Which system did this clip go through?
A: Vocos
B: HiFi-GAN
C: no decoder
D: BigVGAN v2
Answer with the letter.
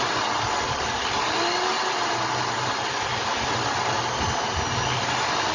C